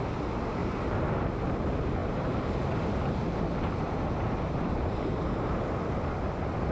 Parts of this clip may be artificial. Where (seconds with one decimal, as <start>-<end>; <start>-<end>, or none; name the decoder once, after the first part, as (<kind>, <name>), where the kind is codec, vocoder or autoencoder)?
0.6-1.3 (vocoder, BigVGAN v2); 2.0-6.0